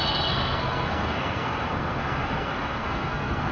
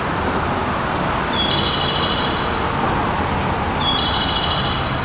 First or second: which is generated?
first